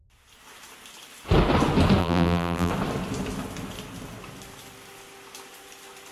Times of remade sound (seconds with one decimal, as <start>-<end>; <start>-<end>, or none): 2.0-2.7